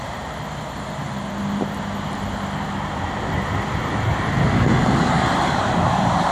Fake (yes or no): no